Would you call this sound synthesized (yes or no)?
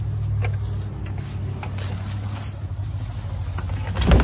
no